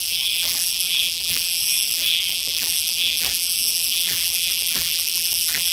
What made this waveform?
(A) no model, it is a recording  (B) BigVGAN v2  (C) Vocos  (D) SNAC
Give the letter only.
B